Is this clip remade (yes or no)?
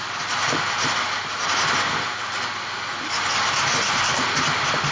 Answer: no